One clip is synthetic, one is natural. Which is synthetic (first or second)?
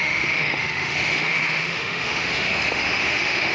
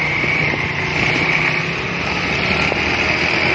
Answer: first